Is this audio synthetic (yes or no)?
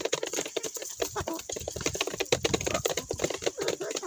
no